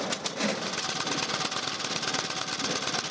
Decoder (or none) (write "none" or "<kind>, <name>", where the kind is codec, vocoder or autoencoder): none